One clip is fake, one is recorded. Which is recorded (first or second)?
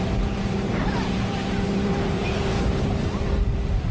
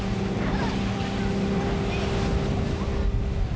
second